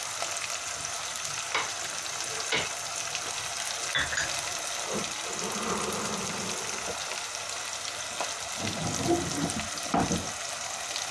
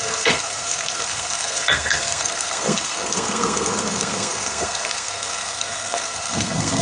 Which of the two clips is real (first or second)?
first